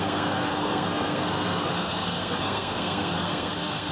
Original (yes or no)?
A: no